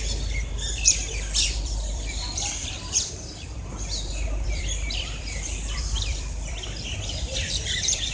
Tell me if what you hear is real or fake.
fake